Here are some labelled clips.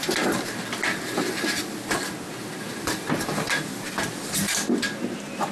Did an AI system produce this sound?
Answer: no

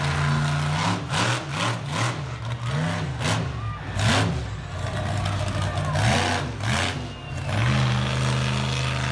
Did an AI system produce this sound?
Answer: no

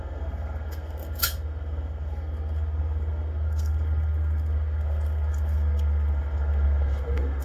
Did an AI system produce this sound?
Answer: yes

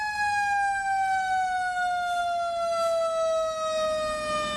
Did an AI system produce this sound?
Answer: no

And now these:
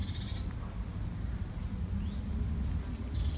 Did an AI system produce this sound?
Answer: no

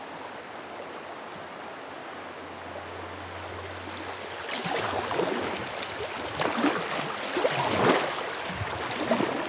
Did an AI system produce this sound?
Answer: no